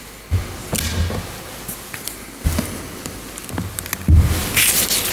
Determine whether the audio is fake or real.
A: real